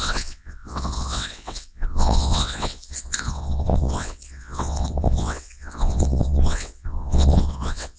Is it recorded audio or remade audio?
remade